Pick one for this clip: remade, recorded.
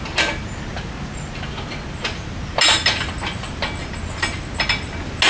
recorded